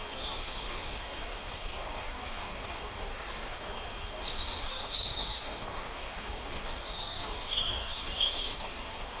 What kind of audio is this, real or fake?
fake